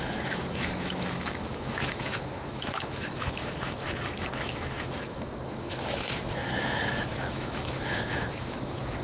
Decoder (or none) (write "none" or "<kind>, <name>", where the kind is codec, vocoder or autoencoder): autoencoder, DAC-VAE